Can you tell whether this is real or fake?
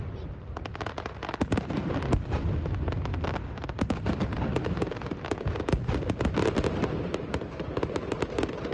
fake